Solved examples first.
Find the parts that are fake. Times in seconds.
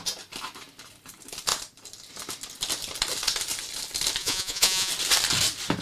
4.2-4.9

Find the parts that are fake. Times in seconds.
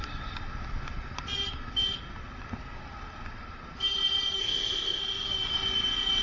4.4-5.0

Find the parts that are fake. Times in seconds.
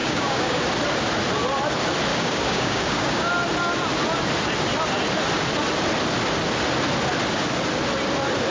0.0-0.6; 2.1-3.3